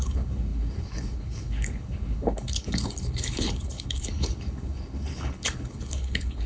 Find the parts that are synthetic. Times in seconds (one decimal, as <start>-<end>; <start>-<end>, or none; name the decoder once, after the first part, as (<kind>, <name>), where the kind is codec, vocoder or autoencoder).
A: 0.0-6.5 (codec, HILCodec)